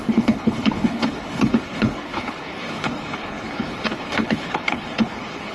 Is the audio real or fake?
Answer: fake